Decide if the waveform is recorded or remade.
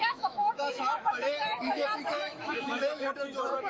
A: remade